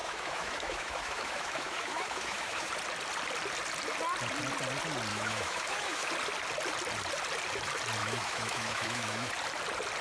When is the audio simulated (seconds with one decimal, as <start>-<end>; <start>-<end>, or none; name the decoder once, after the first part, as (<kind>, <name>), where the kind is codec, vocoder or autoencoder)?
0.0-2.7 (autoencoder, DAC-VAE); 5.1-6.1; 8.0-9.3

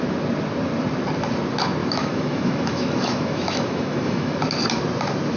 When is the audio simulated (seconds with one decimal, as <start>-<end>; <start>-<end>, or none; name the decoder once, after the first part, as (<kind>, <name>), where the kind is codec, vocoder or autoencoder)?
1.8-4.5 (autoencoder, DAC-VAE)

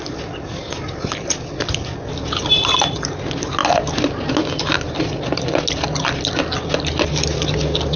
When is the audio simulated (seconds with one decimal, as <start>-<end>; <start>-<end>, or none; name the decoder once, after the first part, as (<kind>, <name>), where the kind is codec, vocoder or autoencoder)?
none

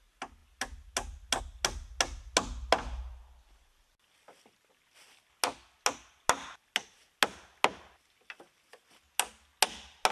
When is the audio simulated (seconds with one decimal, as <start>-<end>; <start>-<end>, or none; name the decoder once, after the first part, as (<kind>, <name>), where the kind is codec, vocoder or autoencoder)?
none

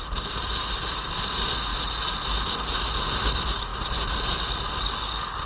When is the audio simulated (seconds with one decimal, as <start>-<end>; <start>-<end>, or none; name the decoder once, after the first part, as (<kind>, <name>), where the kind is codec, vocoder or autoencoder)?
none

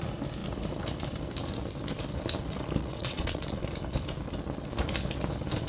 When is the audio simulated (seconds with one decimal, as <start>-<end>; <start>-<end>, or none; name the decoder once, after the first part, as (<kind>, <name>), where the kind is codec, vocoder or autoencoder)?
2.8-3.6 (vocoder, WaveNeXt)

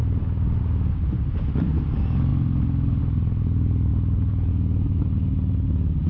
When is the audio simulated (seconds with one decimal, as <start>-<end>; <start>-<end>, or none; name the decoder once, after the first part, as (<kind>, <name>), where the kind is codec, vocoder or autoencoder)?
3.9-4.5 (vocoder, Vocos)